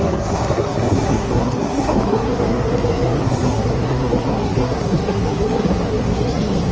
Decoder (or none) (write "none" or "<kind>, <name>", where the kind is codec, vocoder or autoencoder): codec, SNAC